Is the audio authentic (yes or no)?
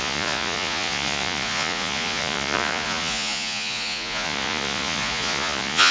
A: no